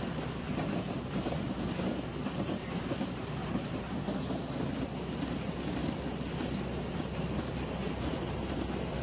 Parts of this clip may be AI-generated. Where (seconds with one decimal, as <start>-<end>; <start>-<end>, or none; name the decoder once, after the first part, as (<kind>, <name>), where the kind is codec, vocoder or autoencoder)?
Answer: 3.4-4.0 (vocoder, BigVGAN v2)